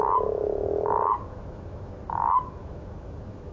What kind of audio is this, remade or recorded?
remade